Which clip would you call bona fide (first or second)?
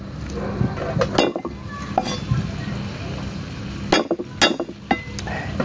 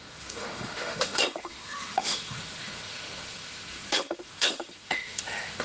first